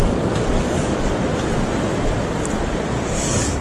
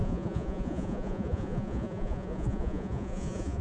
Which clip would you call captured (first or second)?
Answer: first